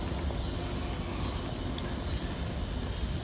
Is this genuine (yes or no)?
yes